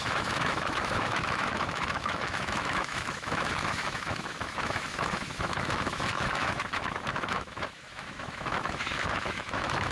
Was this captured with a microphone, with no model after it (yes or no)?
no